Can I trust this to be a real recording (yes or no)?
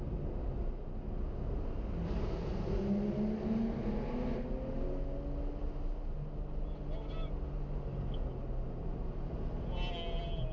yes